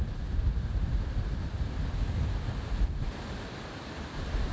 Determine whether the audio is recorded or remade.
recorded